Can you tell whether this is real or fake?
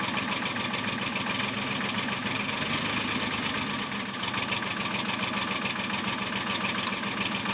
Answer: real